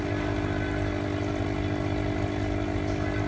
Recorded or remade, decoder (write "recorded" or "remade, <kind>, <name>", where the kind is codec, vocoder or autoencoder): recorded